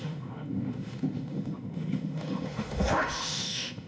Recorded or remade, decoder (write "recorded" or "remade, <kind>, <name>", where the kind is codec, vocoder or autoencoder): remade, autoencoder, DAC-VAE